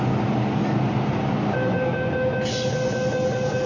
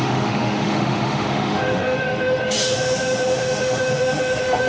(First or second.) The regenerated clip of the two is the second